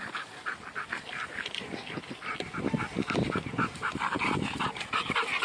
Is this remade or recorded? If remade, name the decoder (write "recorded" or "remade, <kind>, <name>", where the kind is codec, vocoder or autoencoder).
recorded